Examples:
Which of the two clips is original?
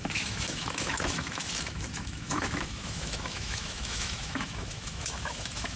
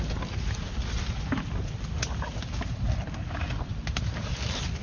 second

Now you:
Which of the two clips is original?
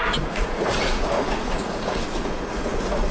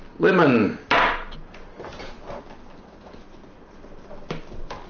second